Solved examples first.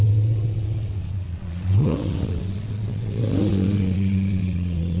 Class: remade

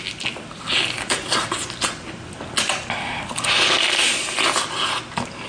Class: recorded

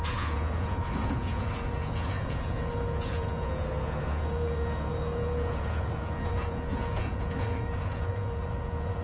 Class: remade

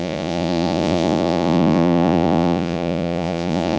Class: remade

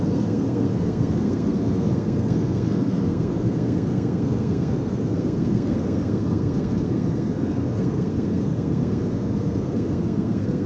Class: remade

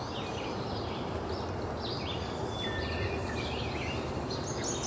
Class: recorded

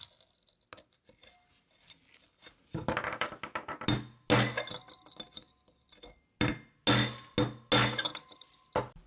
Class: recorded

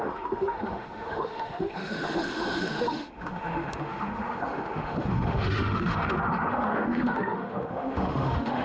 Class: remade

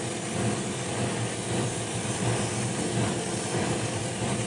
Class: remade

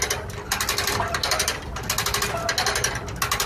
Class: recorded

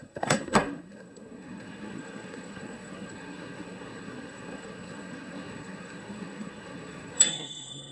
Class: remade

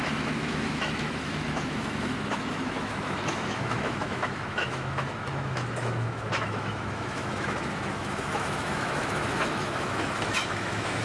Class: remade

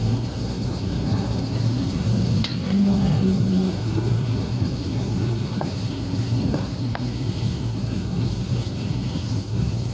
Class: remade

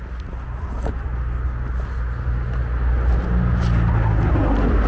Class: recorded